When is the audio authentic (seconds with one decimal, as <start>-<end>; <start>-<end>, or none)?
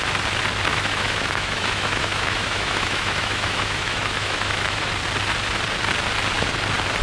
0.0-0.7; 4.9-7.0